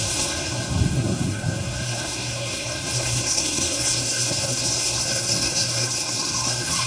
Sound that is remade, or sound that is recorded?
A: remade